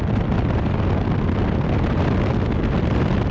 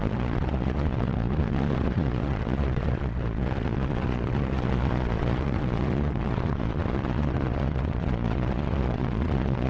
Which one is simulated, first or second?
second